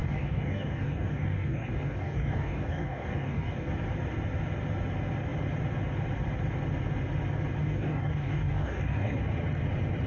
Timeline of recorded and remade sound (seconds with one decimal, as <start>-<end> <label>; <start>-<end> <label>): 0.0-3.7 remade; 3.7-7.6 recorded; 7.6-9.2 remade; 9.2-10.1 recorded